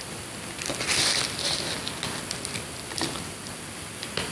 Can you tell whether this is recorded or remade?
recorded